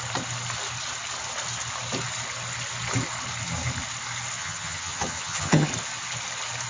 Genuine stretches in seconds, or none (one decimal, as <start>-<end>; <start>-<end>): 0.0-4.4; 5.7-6.7